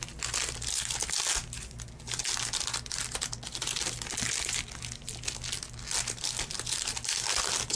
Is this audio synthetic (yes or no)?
no